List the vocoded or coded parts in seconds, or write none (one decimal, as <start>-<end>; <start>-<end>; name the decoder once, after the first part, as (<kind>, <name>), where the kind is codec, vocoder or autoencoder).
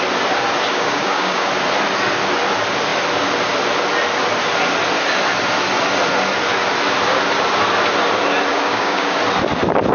0.7-1.5 (codec, DAC); 8.5-9.2